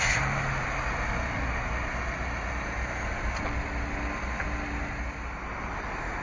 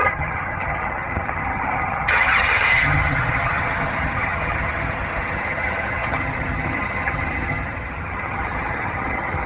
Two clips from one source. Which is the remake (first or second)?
second